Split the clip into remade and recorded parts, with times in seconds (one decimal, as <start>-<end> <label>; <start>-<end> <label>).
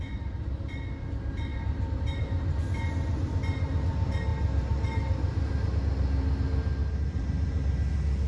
0.0-1.5 recorded; 1.5-2.6 remade; 2.6-4.3 recorded; 4.3-5.8 remade; 5.8-6.8 recorded; 6.8-7.8 remade; 7.8-8.3 recorded